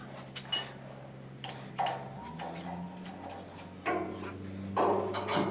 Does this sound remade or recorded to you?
recorded